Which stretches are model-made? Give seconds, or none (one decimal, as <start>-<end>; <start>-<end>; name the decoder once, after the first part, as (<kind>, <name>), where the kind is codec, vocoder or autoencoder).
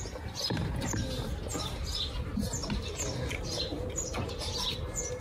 none